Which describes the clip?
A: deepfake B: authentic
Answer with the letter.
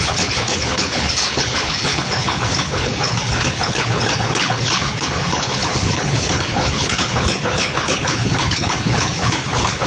A